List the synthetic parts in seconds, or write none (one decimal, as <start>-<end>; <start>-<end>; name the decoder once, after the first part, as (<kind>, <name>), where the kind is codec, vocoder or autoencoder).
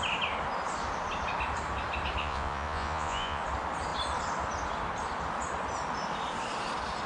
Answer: 2.2-3.4 (vocoder, Vocos)